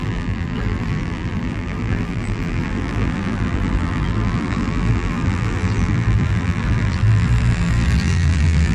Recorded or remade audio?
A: remade